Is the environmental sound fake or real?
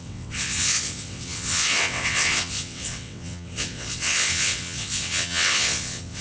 fake